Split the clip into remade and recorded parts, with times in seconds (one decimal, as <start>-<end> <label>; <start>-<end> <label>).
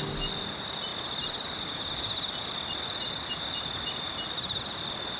0.0-5.2 recorded